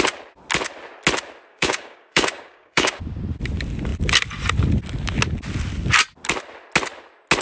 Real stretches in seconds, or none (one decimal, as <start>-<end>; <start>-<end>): 0.0-1.5; 3.0-7.4